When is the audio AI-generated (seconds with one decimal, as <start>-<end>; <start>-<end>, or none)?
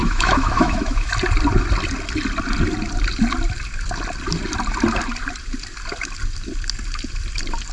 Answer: 0.0-1.1